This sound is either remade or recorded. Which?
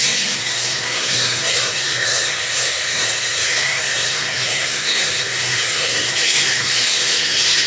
remade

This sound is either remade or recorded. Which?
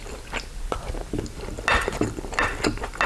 recorded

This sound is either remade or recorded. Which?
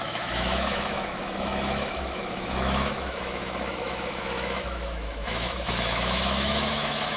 remade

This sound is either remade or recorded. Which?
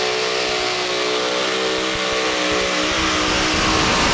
recorded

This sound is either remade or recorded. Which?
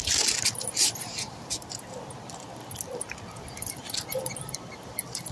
recorded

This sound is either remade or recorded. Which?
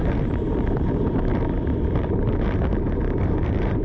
remade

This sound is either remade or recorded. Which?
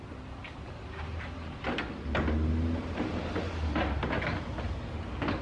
recorded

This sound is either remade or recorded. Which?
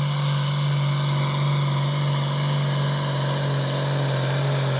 recorded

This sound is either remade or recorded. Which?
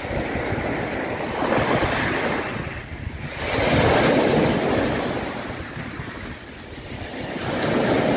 recorded